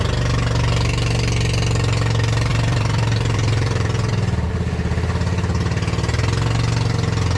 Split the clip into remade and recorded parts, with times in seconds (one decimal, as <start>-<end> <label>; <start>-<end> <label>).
0.0-2.5 recorded; 2.5-4.1 remade; 4.1-7.4 recorded